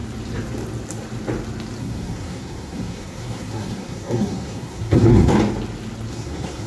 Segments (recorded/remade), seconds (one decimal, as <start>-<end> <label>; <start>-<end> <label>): 0.0-1.8 recorded; 1.8-5.3 remade; 5.3-6.1 recorded; 6.1-6.7 remade